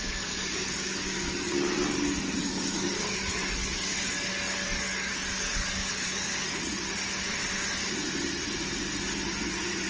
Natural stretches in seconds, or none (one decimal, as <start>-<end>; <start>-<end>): 1.5-2.4; 6.8-9.9